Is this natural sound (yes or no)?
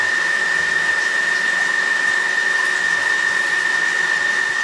yes